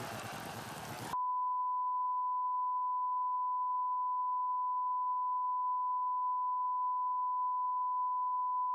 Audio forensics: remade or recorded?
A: recorded